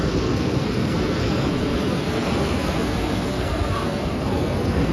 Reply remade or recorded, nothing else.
remade